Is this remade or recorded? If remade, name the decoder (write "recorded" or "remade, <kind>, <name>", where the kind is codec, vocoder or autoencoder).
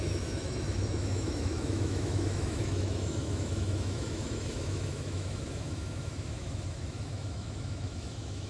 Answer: remade, autoencoder, DAC-VAE